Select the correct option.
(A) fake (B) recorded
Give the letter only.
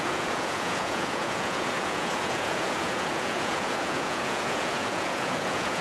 A